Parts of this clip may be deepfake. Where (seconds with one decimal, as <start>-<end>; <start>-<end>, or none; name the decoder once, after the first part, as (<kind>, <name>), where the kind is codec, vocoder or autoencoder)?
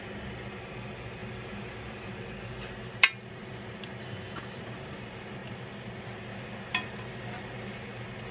4.0-4.6 (autoencoder, DAC-VAE)